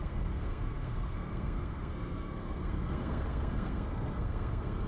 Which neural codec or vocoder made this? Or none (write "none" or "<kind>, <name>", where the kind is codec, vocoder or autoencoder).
codec, SNAC